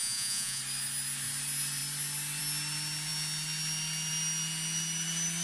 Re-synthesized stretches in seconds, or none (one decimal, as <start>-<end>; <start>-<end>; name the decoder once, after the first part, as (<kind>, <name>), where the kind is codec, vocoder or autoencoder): 0.0-0.6 (vocoder, Vocos)